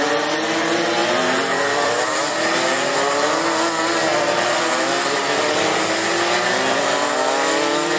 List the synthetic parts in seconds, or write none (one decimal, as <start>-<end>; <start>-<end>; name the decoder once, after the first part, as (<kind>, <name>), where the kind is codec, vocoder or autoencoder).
1.0-2.2 (vocoder, BigVGAN v2); 4.1-5.2